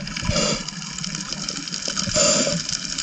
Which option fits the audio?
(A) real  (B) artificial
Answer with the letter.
A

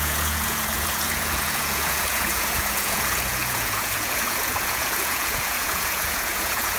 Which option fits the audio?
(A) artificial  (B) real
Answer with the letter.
A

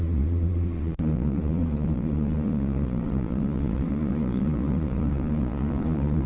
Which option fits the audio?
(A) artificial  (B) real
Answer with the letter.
A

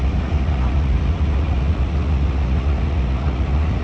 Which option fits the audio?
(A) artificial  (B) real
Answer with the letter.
A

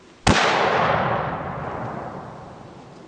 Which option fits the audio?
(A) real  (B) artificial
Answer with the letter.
A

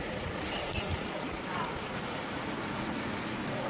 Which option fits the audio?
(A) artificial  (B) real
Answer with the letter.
A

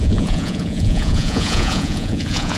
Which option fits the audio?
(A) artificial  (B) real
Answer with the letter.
A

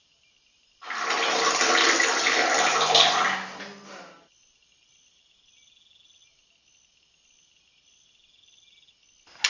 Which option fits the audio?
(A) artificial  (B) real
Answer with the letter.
B